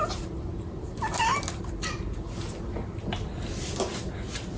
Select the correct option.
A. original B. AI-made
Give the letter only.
A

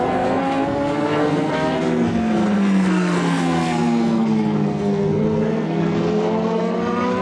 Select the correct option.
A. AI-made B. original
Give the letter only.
A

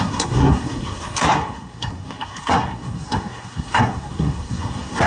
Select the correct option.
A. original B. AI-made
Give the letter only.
B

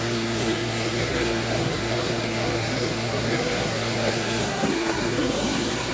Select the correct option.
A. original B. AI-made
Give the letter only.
B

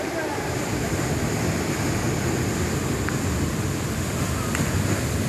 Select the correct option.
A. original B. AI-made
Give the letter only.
A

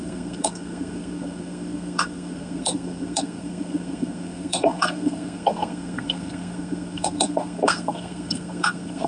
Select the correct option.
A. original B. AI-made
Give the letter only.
B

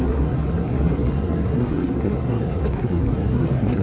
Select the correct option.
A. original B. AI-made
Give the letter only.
B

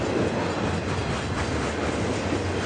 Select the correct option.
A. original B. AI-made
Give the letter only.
A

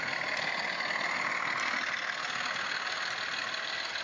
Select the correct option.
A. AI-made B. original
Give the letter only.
B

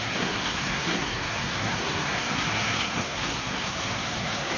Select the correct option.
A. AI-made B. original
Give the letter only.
A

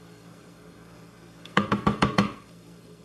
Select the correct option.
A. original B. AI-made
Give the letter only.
B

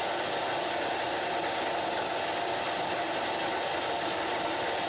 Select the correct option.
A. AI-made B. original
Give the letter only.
B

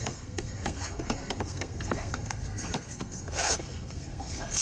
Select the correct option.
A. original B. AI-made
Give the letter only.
B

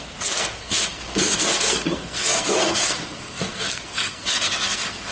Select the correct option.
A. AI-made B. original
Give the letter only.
A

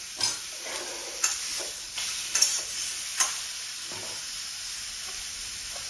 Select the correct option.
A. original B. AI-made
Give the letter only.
A